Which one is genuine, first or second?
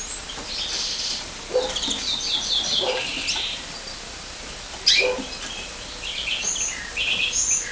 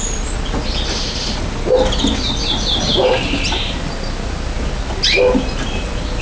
second